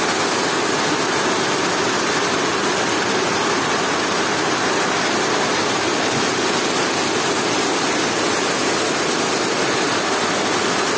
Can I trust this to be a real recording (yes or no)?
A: yes